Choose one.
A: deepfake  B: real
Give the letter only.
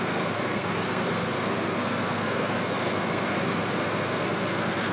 A